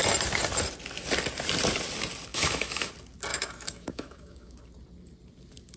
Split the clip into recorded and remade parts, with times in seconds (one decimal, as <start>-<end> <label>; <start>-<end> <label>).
0.0-2.3 recorded; 2.3-2.9 remade; 2.9-3.3 recorded; 3.3-4.6 remade; 4.6-5.8 recorded